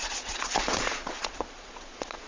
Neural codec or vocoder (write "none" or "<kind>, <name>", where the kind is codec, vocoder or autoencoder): vocoder, Vocos